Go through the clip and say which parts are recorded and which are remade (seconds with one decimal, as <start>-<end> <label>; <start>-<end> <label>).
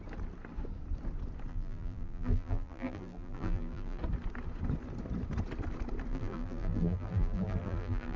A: 0.0-1.5 recorded; 1.5-4.0 remade; 4.0-6.1 recorded; 6.1-8.2 remade